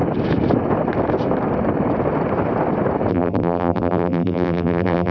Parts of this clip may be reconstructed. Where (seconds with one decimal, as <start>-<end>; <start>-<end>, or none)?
3.1-5.1